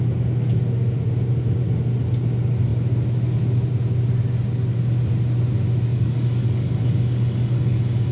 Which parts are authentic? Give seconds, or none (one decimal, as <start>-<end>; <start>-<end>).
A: 0.0-5.9